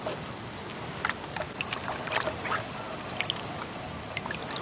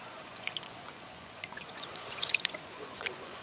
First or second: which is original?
first